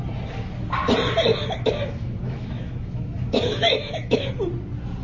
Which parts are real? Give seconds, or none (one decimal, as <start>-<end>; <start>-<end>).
0.0-1.3; 4.3-5.0